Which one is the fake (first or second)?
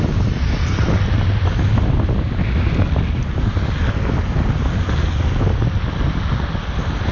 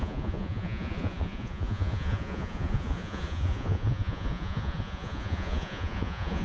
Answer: second